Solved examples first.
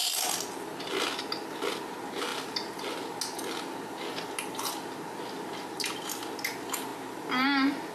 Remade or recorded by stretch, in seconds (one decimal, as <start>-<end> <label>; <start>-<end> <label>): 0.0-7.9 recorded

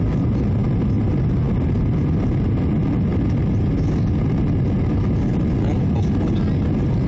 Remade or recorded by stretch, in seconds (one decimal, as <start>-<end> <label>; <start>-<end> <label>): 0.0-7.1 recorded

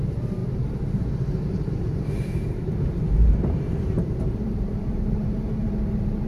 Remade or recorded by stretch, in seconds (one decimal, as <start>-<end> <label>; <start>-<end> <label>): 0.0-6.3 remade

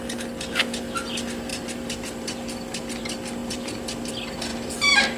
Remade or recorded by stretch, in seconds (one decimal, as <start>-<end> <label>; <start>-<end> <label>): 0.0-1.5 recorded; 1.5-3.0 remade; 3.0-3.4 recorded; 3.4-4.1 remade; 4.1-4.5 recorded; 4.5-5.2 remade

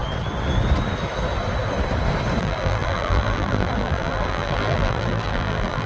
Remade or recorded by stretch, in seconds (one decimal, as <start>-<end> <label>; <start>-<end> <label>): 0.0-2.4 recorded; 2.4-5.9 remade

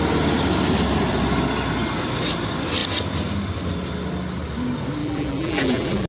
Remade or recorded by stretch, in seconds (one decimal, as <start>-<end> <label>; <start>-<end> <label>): 0.0-5.0 recorded; 5.0-6.1 remade

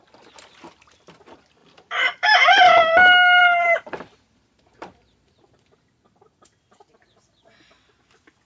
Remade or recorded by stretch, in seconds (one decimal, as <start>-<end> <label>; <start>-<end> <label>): 0.0-1.6 recorded; 1.6-2.6 remade; 2.6-3.4 recorded; 3.4-7.9 remade; 7.9-8.5 recorded

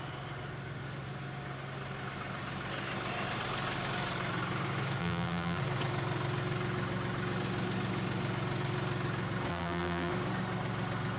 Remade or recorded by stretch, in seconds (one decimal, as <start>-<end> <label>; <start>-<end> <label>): 0.0-5.0 recorded; 5.0-5.6 remade; 5.6-9.5 recorded; 9.5-10.1 remade; 10.1-11.2 recorded